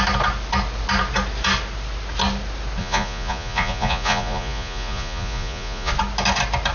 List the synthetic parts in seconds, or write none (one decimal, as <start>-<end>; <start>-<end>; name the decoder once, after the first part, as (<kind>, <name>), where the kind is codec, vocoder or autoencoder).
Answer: 2.8-5.9 (vocoder, Vocos)